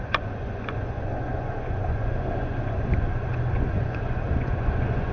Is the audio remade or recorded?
remade